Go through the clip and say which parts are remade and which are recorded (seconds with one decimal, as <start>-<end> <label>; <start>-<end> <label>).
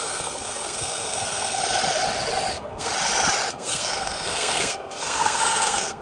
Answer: 0.0-1.6 remade; 1.6-2.5 recorded; 2.5-2.9 remade; 2.9-3.5 recorded; 3.5-6.0 remade